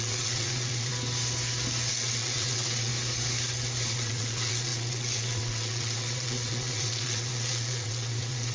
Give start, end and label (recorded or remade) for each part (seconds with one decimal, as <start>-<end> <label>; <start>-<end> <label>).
0.0-0.9 remade; 0.9-1.9 recorded; 1.9-2.9 remade; 2.9-3.9 recorded; 3.9-8.5 remade